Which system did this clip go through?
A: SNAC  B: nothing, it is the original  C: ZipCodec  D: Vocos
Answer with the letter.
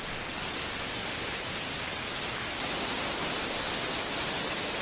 B